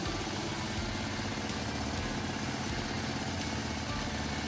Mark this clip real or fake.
real